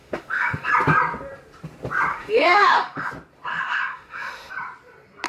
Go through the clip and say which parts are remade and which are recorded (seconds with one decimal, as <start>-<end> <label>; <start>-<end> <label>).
0.0-0.7 remade; 0.7-2.1 recorded; 2.1-3.1 remade; 3.1-3.5 recorded; 3.5-4.5 remade; 4.5-5.3 recorded